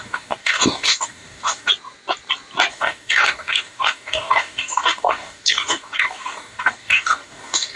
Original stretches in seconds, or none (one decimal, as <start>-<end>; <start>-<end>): 1.7-2.7